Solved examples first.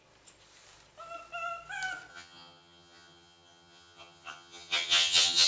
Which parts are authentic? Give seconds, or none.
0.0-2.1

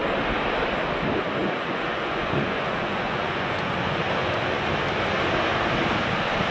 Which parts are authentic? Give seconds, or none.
0.0-1.4; 4.7-6.5